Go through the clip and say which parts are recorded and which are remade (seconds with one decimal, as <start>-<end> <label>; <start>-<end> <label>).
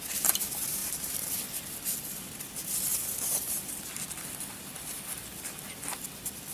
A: 0.0-0.8 recorded; 0.8-1.3 remade; 1.3-2.9 recorded; 2.9-3.6 remade; 3.6-6.5 recorded